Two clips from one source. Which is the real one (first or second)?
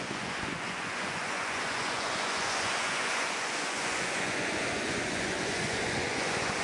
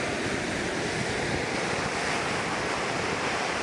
second